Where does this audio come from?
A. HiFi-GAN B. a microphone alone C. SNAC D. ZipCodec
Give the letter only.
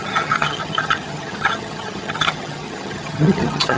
A